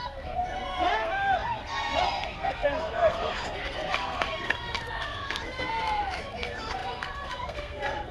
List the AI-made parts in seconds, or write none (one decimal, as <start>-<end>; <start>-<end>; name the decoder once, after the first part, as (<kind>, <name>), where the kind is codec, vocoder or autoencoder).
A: 0.0-8.1 (codec, SNAC)